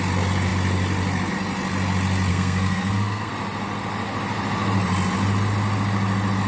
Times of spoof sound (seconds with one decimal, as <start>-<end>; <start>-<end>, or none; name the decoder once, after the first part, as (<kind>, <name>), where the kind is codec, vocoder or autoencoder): 2.3-3.3 (codec, SNAC)